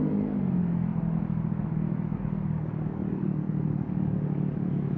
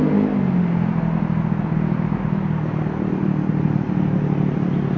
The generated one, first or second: first